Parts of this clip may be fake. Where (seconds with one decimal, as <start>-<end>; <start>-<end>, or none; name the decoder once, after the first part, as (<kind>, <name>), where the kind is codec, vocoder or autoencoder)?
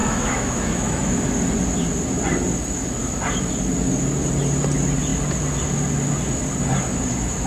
0.0-1.3 (autoencoder, DAC-VAE)